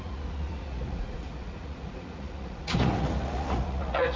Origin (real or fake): fake